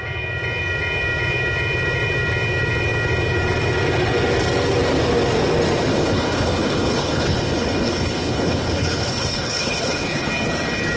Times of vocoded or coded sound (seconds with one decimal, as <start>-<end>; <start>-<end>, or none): 5.9-10.3